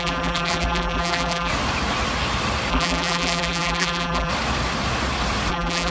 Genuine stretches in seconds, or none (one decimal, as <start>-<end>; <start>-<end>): 1.5-2.7; 4.3-5.5